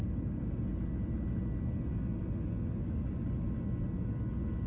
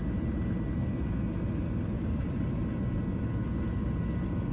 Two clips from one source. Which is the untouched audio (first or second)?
first